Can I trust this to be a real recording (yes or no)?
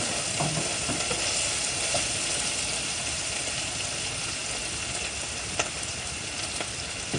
yes